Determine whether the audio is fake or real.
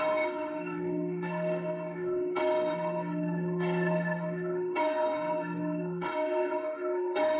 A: fake